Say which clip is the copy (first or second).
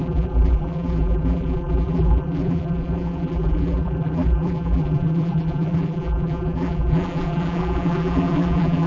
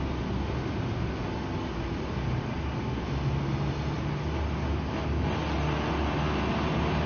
first